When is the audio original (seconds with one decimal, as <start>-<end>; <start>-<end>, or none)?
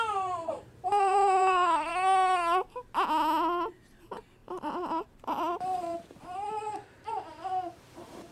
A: 1.9-3.7